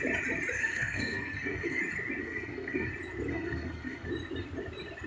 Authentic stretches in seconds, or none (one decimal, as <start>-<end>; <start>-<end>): 0.0-0.6; 1.8-2.2; 2.9-3.3; 4.1-5.1